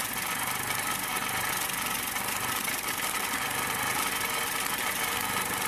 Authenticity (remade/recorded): recorded